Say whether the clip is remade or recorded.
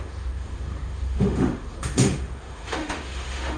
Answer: remade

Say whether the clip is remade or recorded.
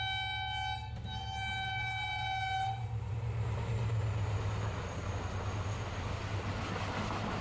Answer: recorded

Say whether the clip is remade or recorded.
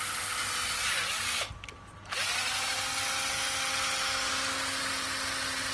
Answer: recorded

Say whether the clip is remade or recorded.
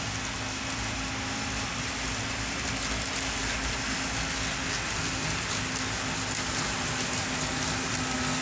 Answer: recorded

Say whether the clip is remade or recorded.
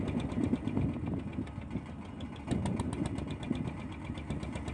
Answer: recorded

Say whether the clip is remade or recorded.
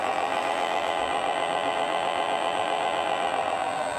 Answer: remade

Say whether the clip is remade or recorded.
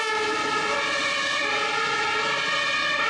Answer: recorded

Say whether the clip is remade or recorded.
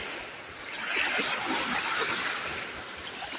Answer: recorded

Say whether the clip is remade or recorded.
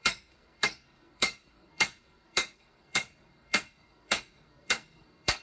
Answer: remade